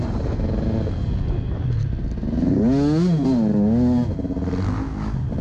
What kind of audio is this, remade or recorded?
recorded